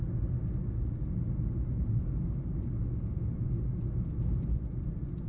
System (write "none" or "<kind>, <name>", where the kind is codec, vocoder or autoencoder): none